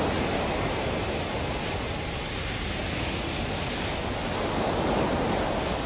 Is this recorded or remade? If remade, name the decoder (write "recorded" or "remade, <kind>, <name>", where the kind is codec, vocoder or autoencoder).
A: recorded